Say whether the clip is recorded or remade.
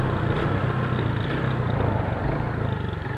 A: recorded